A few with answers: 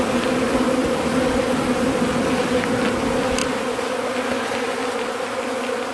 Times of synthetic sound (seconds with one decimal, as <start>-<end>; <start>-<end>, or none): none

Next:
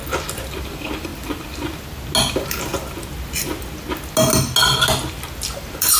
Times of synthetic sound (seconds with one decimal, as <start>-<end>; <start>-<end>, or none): 0.6-1.1; 2.3-2.7; 5.5-6.0

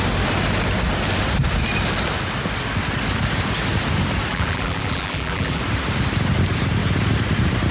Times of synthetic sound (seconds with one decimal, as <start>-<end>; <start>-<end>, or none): 4.3-5.6

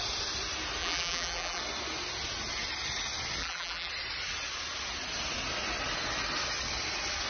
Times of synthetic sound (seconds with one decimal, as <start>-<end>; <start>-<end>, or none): 0.8-1.6; 3.4-3.9

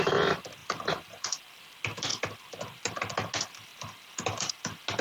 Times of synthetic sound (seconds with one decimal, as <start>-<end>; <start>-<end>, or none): 0.6-1.5; 3.7-4.5

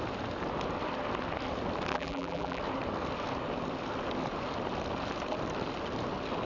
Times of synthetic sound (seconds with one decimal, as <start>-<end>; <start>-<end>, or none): 1.9-2.6

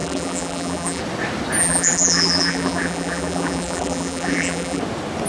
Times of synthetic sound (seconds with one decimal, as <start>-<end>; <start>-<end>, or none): 0.0-1.0; 1.6-4.8

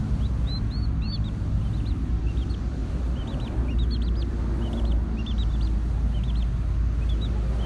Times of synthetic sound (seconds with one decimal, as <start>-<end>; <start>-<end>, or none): none